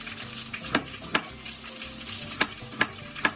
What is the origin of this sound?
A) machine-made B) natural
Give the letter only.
B